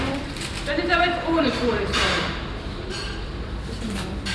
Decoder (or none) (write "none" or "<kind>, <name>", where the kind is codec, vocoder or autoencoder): vocoder, BigVGAN v2